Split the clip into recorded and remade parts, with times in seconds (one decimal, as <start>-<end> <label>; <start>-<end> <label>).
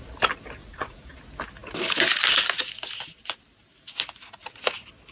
0.0-0.6 recorded; 0.6-1.2 remade; 1.2-5.1 recorded